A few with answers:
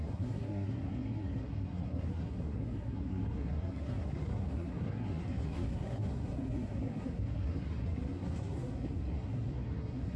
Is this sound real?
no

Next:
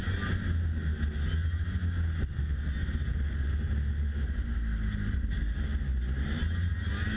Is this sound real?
yes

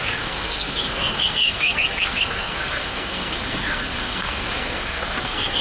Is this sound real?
no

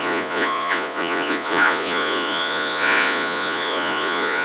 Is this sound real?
no